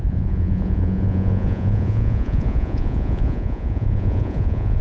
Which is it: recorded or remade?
remade